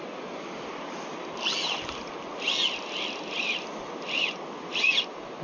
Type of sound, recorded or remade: recorded